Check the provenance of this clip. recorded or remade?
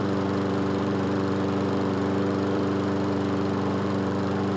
remade